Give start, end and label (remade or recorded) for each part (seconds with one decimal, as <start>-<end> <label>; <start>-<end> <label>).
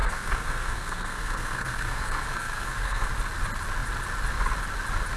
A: 0.0-3.1 remade; 3.1-5.2 recorded